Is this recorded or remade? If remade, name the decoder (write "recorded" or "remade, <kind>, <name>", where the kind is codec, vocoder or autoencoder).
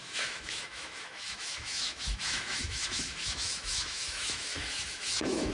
remade, autoencoder, DAC-VAE